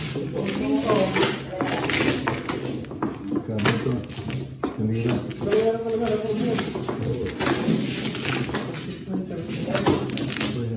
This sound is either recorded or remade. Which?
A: recorded